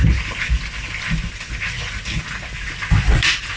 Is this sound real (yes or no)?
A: yes